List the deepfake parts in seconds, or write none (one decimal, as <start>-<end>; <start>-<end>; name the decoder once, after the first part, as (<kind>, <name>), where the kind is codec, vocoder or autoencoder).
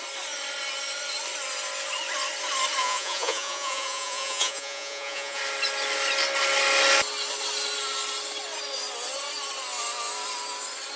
2.8-5.4 (vocoder, Vocos)